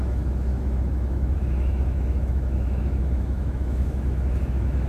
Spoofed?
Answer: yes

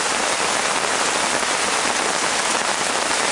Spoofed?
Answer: no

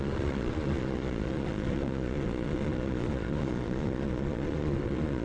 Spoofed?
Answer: yes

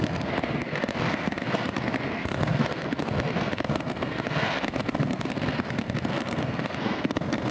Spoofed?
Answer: yes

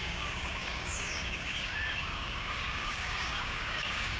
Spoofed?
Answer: yes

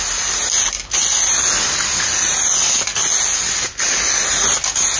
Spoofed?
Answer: no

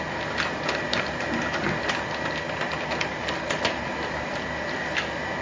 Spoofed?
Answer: no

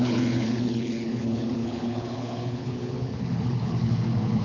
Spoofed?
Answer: yes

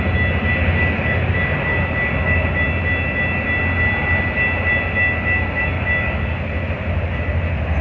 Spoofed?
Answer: no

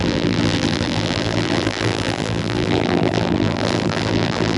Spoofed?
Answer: yes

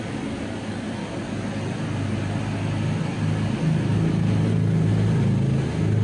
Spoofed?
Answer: no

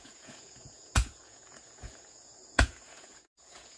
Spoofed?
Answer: yes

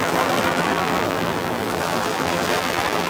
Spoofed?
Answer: yes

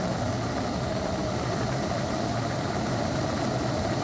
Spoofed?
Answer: no